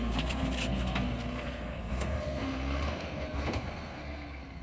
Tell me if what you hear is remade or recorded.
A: remade